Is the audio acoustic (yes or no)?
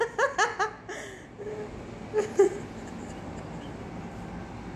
yes